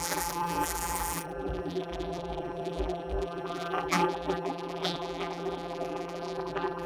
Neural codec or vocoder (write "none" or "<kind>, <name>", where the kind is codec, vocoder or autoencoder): vocoder, BigVGAN v2